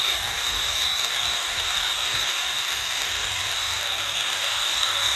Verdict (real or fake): fake